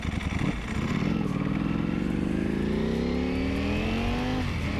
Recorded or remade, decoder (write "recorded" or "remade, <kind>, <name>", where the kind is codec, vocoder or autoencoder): recorded